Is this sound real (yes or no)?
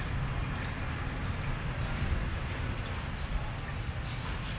yes